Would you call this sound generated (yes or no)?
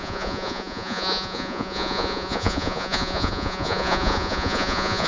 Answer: yes